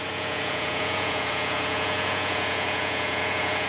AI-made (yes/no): yes